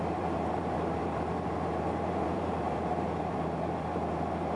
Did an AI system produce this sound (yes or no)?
yes